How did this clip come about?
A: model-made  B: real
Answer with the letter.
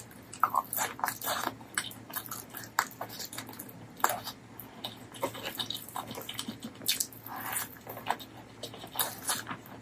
B